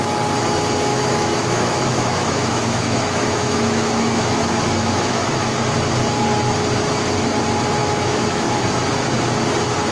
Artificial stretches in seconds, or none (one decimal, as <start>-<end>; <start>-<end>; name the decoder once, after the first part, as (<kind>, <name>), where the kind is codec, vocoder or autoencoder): 0.9-5.5 (autoencoder, DAC-VAE); 7.8-8.6